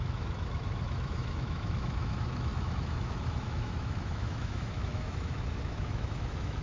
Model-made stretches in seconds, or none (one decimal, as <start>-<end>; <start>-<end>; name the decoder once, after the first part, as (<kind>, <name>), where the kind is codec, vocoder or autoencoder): 0.0-6.6 (autoencoder, DAC-VAE)